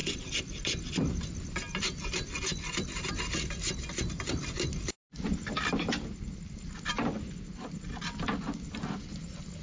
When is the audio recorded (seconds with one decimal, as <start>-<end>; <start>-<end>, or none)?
3.1-9.6

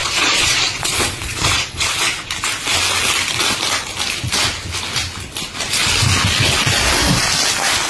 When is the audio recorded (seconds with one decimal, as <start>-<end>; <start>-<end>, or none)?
2.3-7.9

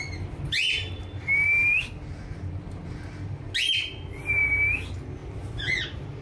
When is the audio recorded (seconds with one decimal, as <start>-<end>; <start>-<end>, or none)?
0.0-6.2